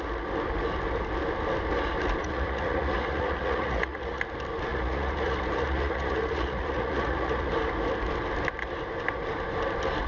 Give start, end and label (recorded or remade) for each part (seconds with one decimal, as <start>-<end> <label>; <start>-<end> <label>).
0.0-2.2 recorded; 2.2-4.2 remade; 4.2-4.7 recorded; 4.7-7.5 remade; 7.5-10.1 recorded